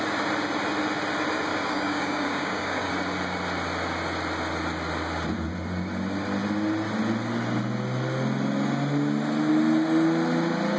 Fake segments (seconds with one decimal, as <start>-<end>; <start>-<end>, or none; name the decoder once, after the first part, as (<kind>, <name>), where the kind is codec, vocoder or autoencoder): 1.5-2.9 (codec, DAC)